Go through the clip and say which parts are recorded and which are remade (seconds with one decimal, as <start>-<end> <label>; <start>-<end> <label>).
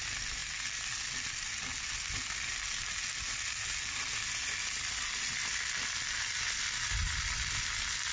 0.0-8.1 recorded